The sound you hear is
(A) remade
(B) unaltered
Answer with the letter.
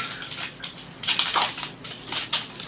B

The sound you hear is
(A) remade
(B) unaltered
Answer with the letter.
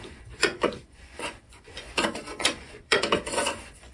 A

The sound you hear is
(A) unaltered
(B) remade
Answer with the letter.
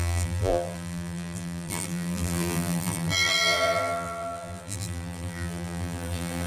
B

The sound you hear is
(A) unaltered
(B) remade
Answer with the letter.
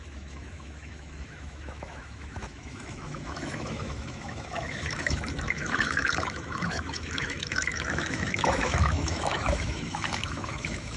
B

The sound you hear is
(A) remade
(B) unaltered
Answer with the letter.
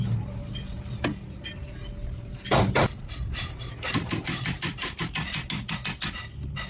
B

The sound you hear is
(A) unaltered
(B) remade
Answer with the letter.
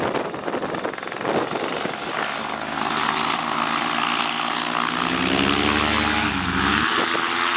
A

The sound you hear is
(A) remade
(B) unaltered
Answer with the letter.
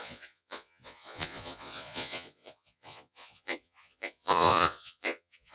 A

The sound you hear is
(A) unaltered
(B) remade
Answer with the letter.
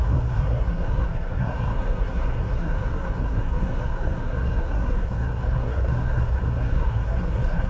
B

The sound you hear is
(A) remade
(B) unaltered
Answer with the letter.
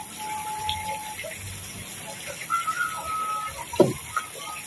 B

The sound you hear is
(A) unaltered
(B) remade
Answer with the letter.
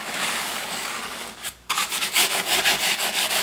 B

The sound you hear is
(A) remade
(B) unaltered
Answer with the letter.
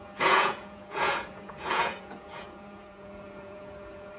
A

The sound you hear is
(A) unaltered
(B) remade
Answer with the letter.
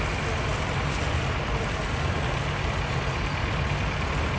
A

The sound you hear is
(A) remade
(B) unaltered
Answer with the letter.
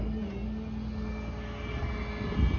B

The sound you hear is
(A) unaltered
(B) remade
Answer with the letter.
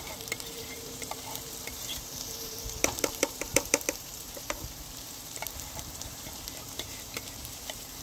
B